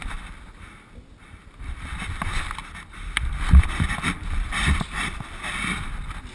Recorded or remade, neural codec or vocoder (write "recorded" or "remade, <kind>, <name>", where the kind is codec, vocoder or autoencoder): recorded